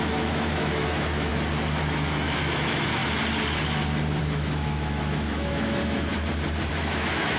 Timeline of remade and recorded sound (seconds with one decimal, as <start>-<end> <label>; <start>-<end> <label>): 0.0-1.3 remade; 1.3-1.8 recorded; 1.8-3.0 remade; 3.0-4.2 recorded; 4.2-6.1 remade; 6.1-6.7 recorded; 6.7-7.4 remade